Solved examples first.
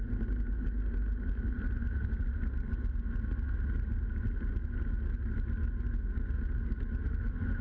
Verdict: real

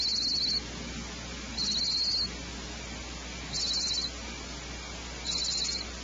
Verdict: real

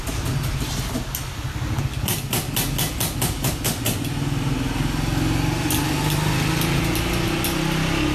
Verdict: real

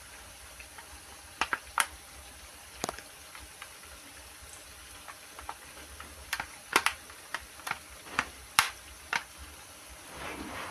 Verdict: fake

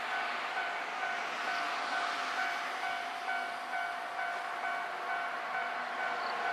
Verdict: real